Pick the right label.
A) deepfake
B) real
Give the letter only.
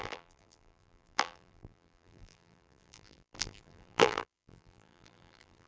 A